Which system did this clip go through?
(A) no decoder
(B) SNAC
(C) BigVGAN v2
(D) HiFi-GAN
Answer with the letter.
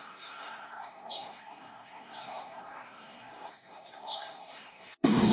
B